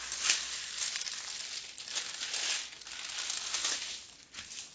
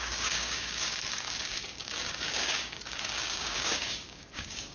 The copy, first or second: second